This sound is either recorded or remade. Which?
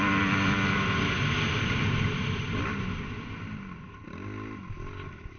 recorded